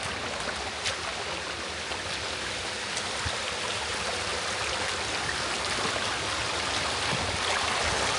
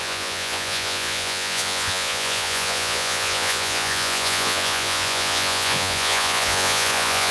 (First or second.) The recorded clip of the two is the first